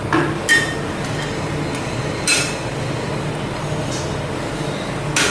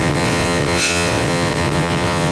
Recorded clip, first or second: first